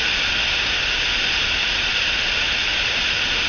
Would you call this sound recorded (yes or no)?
yes